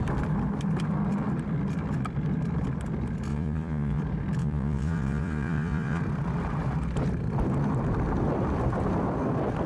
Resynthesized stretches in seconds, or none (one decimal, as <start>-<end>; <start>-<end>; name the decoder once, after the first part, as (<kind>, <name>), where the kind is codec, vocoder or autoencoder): 3.3-4.0 (vocoder, Vocos); 4.4-6.0